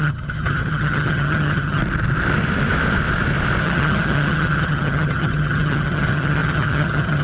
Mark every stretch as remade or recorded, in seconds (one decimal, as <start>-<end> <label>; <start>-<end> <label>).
0.0-1.8 remade; 1.8-3.6 recorded; 3.6-7.2 remade

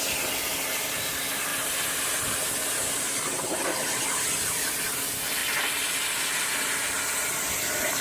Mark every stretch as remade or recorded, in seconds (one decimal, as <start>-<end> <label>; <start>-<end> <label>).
0.0-5.4 recorded; 5.4-6.2 remade; 6.2-8.0 recorded

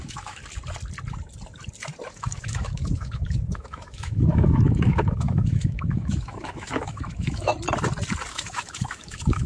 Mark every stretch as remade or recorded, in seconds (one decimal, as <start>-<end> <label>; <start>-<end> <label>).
0.0-0.4 remade; 0.4-2.1 recorded; 2.1-7.5 remade; 7.5-8.3 recorded; 8.3-9.5 remade

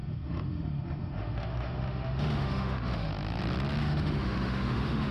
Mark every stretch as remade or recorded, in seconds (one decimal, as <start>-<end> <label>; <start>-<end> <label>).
0.0-3.1 remade; 3.1-3.8 recorded; 3.8-5.1 remade

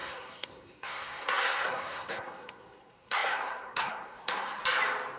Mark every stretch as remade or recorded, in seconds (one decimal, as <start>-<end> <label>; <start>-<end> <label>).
0.0-4.6 remade; 4.6-5.2 recorded